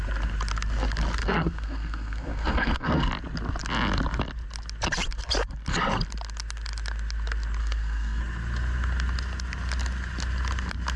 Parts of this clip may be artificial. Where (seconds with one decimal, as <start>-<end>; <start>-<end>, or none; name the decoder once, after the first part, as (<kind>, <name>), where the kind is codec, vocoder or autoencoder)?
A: 1.2-3.1 (codec, SNAC); 7.6-8.2